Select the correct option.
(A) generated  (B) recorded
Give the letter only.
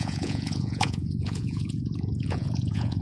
A